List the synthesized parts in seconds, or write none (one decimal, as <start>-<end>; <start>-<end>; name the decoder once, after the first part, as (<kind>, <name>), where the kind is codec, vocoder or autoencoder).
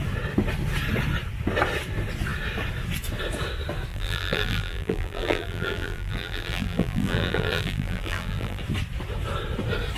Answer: 3.9-8.6 (vocoder, BigVGAN v2)